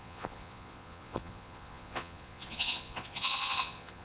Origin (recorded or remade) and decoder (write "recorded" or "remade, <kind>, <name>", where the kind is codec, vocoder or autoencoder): remade, vocoder, Vocos